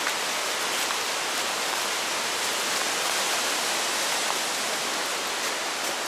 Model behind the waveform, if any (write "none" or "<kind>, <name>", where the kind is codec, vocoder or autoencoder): none